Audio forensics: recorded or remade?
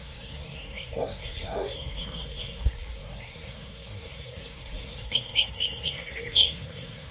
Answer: remade